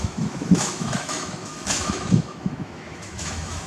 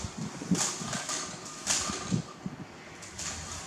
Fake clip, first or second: first